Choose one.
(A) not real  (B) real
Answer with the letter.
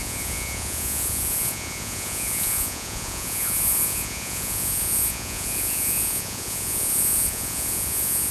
A